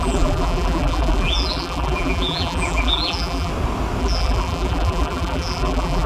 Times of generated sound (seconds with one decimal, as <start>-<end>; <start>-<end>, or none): 0.0-3.5; 4.0-6.1